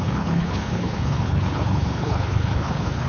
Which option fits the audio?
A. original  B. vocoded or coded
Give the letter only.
B